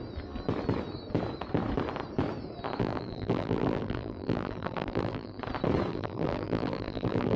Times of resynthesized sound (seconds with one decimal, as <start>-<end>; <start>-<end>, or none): 2.8-5.4; 5.9-7.4